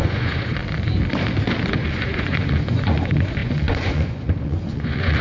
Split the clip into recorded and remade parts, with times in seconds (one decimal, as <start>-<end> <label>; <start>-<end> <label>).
0.0-0.6 remade; 0.6-1.7 recorded; 1.7-5.2 remade